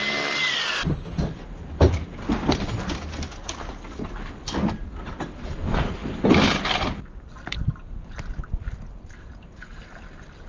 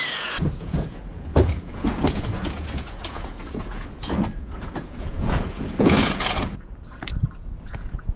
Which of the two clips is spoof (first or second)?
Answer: second